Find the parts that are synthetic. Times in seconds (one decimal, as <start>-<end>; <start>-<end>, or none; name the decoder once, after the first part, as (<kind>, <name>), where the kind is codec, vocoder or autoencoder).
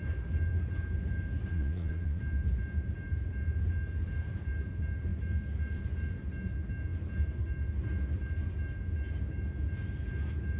1.5-2.2 (vocoder, Vocos)